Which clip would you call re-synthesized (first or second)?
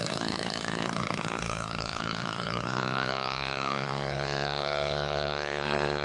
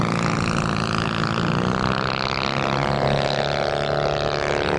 first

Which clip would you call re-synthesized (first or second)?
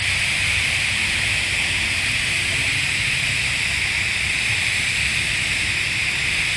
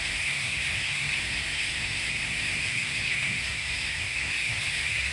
second